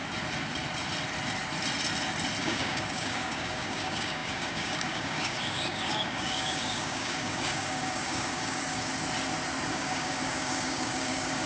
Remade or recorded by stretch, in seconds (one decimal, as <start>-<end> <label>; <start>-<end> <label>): 0.0-2.4 recorded; 2.4-8.9 remade; 8.9-9.7 recorded; 9.7-11.5 remade